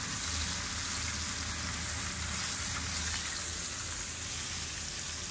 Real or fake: real